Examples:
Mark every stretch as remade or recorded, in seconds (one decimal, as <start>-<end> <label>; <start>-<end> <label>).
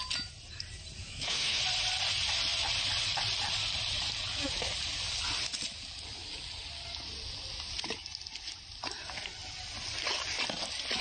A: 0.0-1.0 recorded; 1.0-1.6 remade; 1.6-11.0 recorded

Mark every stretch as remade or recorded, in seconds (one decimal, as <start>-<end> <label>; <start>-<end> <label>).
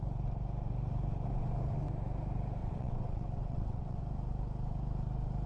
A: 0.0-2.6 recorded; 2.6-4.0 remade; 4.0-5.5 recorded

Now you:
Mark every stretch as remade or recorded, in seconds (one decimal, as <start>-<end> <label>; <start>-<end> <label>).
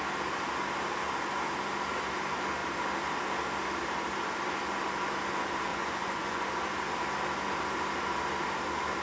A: 0.0-5.7 recorded; 5.7-6.4 remade; 6.4-9.0 recorded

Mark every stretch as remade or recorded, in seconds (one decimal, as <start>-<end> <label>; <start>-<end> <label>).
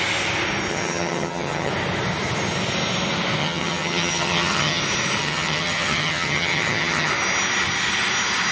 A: 0.0-0.7 recorded; 0.7-1.7 remade; 1.7-3.4 recorded; 3.4-4.8 remade; 4.8-5.2 recorded; 5.2-7.1 remade; 7.1-8.5 recorded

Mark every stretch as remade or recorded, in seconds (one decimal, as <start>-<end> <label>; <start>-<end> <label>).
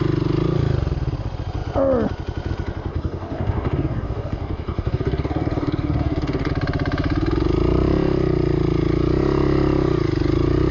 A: 0.0-2.9 recorded; 2.9-6.5 remade; 6.5-10.7 recorded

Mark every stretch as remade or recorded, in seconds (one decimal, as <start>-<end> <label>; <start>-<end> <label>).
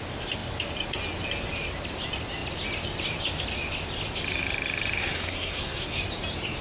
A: 0.0-5.0 recorded; 5.0-6.0 remade; 6.0-6.6 recorded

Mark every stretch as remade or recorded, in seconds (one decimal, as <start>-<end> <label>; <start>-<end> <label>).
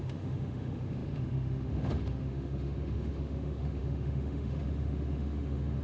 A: 0.0-5.8 remade